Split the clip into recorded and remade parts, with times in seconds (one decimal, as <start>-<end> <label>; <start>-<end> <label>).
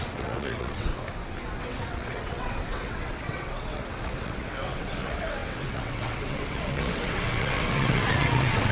0.0-0.9 remade; 0.9-1.6 recorded; 1.6-8.7 remade